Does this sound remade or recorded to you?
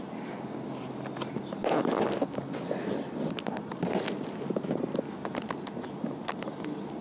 recorded